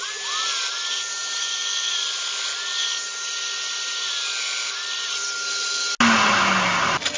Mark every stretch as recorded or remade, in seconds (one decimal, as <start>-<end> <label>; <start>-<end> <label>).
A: 0.0-7.2 recorded